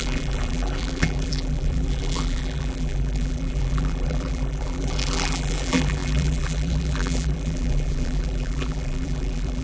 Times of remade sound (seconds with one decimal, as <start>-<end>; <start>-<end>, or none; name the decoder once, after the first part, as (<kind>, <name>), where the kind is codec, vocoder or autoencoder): 0.0-9.6 (vocoder, BigVGAN v2)